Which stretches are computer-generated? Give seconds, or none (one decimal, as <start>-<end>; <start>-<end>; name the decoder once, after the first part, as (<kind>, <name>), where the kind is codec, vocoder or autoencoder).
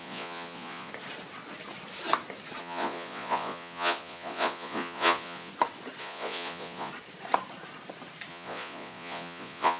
0.0-0.9 (vocoder, Vocos); 2.6-5.5; 6.0-6.9; 8.3-9.8